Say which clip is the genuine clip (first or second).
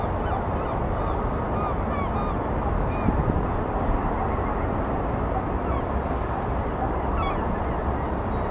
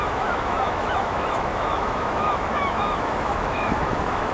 first